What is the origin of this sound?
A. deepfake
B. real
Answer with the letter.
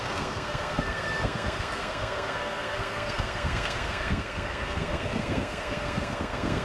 A